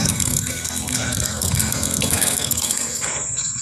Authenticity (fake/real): fake